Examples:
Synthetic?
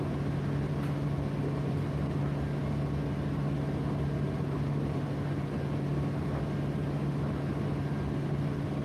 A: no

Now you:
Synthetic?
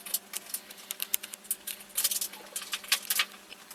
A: no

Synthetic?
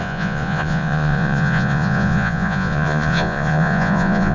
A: yes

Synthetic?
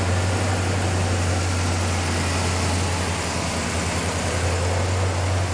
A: no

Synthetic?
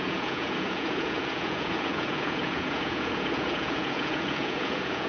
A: yes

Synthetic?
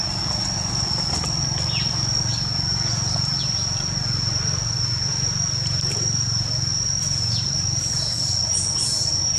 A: no